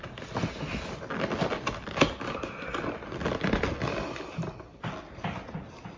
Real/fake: real